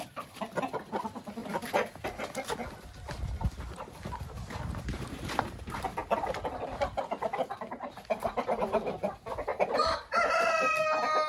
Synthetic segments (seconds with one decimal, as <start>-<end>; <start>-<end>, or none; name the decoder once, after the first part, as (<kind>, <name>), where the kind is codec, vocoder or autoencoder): 9.5-10.5 (vocoder, BigVGAN v2)